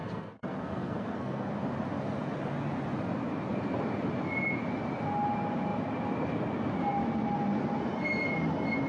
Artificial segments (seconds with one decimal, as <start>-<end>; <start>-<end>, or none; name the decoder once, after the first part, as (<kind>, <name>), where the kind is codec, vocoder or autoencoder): 0.0-1.5 (codec, SNAC)